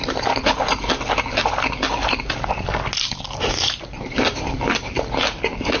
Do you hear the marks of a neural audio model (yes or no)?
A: no